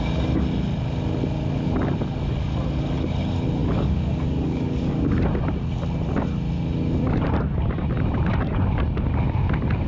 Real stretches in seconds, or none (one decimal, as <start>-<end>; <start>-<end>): 0.0-3.6; 4.9-9.9